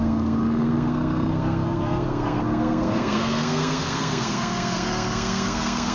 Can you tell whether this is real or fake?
fake